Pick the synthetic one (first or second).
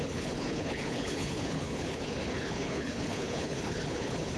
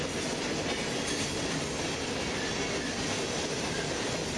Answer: first